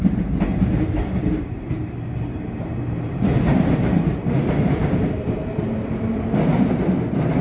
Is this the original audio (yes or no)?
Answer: no